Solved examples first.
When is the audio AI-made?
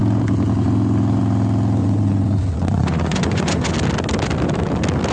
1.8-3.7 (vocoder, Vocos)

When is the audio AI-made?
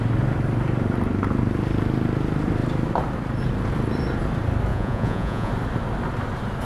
4.7-5.5 (vocoder, Vocos)